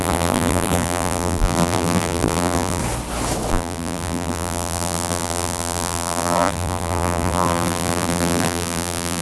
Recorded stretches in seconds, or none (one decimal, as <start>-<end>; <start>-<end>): 2.8-3.5